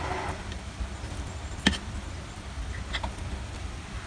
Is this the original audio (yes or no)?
yes